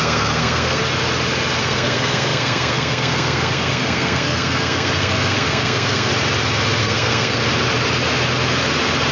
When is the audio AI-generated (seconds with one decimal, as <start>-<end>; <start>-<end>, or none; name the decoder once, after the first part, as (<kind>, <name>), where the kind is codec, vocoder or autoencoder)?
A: 0.0-0.8 (codec, SNAC); 1.6-6.1; 6.8-7.4